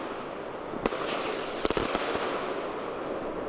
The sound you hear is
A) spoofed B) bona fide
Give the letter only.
B